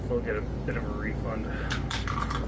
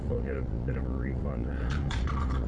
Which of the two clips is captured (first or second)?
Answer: first